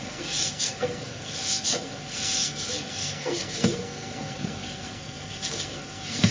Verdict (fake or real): fake